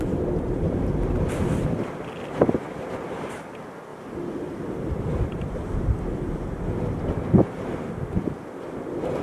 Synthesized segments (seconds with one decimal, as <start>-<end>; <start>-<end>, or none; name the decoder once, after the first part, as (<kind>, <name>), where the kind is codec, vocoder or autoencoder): 3.9-5.9 (vocoder, BigVGAN v2)